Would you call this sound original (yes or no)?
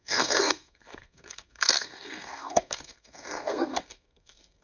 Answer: no